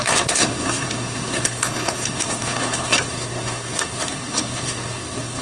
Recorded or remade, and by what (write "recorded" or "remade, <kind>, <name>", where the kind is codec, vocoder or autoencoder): remade, codec, SNAC